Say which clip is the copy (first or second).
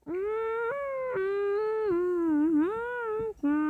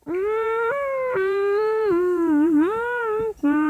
second